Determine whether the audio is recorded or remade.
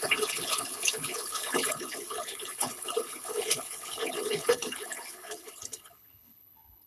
remade